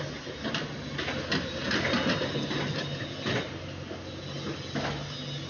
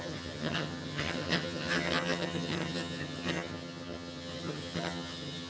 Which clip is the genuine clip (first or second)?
first